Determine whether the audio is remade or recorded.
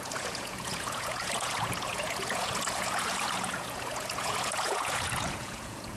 remade